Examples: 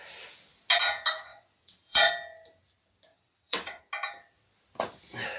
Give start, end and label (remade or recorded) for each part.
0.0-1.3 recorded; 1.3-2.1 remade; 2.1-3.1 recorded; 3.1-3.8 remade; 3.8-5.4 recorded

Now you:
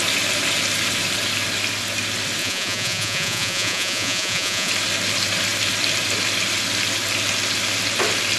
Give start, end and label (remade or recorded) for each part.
0.0-2.4 recorded; 2.4-4.7 remade; 4.7-8.4 recorded

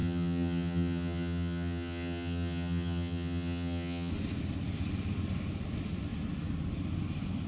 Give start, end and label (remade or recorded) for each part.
0.0-4.1 remade; 4.1-7.5 recorded

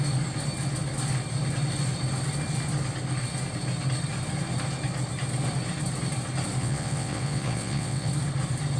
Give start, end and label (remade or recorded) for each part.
0.0-6.6 recorded; 6.6-8.1 remade; 8.1-8.8 recorded

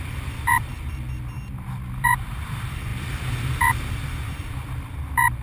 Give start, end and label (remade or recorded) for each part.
0.0-2.9 remade; 2.9-3.5 recorded; 3.5-5.4 remade